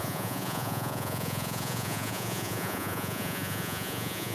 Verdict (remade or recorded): remade